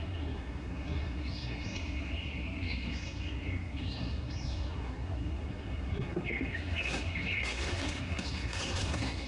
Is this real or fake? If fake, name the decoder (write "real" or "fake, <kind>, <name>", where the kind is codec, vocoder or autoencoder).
fake, codec, SNAC